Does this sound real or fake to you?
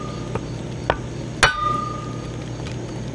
real